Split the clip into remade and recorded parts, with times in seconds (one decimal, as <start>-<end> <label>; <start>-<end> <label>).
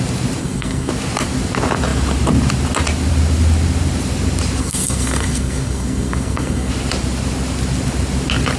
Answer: 0.0-0.4 recorded; 0.4-0.9 remade; 0.9-4.6 recorded; 4.6-6.7 remade; 6.7-8.6 recorded